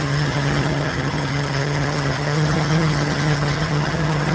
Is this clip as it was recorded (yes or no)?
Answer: no